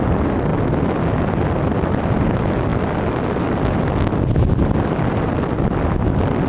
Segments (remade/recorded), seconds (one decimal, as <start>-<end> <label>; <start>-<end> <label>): 0.0-6.5 recorded